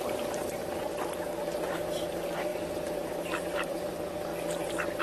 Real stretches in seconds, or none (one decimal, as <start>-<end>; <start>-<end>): 0.9-1.6; 4.3-5.0

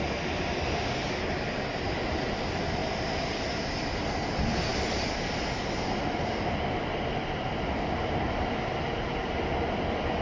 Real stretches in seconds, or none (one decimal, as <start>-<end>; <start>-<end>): 0.0-10.2